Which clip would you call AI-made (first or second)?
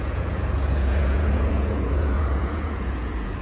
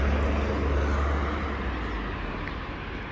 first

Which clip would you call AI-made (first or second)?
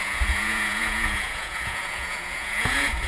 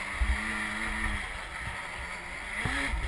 first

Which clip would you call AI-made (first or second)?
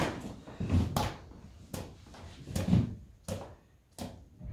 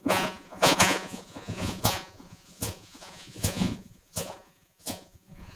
second